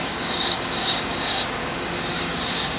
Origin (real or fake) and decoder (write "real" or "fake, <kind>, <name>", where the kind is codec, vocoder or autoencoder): fake, codec, DAC